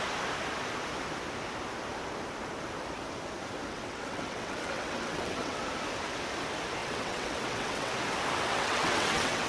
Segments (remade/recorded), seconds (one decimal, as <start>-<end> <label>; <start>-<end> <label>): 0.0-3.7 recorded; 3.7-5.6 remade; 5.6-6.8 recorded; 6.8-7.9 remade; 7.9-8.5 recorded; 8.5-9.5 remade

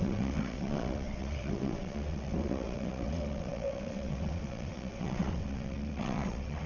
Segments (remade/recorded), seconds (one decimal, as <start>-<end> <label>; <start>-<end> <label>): 0.0-6.7 remade

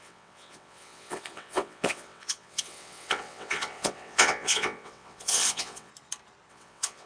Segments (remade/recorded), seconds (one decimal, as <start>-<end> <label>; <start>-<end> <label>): 0.0-5.9 remade; 5.9-6.5 recorded; 6.5-7.1 remade